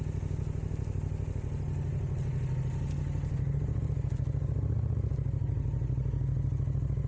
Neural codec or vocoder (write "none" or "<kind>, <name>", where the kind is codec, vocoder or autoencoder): none